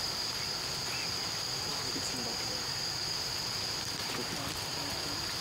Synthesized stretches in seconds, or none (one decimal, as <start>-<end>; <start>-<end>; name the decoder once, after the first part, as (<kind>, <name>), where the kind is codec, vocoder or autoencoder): none